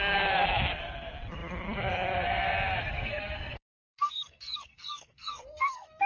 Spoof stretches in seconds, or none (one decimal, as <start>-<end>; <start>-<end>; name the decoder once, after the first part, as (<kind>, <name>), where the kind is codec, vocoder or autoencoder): 2.9-6.1 (codec, SNAC)